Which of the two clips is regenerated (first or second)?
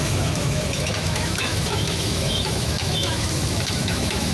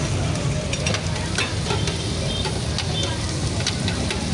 first